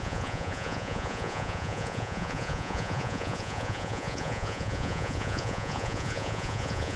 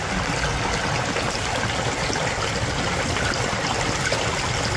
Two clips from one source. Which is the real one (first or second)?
second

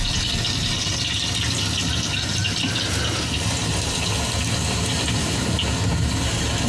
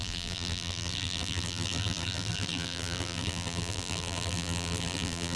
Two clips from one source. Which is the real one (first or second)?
first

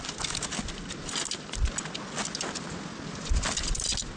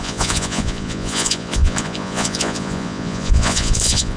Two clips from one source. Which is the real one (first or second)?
first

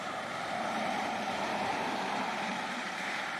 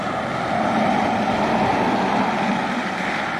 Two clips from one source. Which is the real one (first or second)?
second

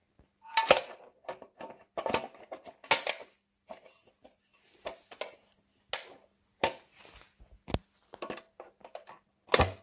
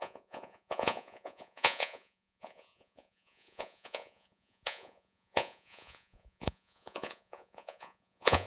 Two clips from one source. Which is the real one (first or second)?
first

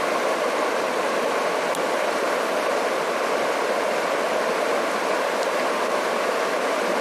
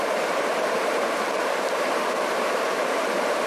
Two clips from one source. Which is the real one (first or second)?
first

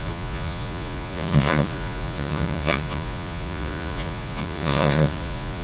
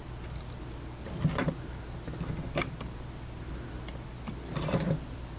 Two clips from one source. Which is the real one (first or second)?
second